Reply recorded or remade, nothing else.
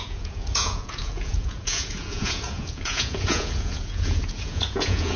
remade